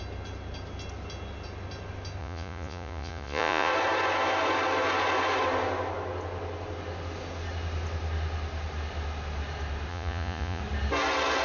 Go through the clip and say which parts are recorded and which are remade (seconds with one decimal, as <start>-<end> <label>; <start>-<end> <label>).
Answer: 0.0-2.2 recorded; 2.2-3.7 remade; 3.7-9.9 recorded; 9.9-10.6 remade; 10.6-11.4 recorded